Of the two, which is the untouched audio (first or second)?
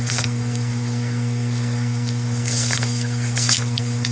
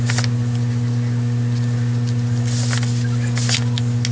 second